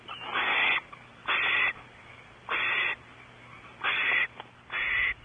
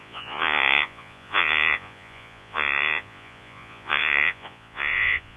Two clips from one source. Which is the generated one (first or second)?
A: second